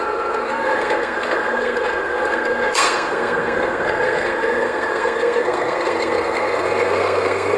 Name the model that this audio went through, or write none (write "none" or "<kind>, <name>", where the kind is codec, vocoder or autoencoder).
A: codec, SNAC